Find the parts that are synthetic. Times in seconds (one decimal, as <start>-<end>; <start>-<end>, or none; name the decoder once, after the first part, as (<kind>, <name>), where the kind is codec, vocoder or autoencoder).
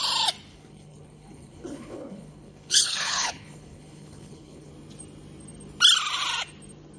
0.5-4.7 (codec, HILCodec)